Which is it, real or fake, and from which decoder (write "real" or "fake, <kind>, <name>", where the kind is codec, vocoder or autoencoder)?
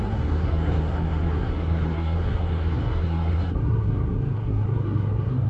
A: fake, codec, SNAC